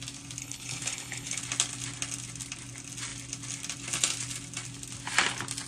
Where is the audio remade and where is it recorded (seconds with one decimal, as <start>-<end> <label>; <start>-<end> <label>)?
0.0-0.4 recorded; 0.4-1.4 remade; 1.4-5.7 recorded